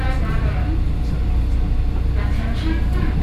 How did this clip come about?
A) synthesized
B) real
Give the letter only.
B